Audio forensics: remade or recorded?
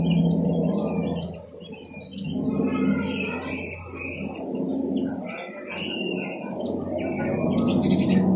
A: recorded